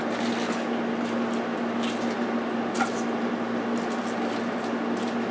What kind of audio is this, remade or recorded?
recorded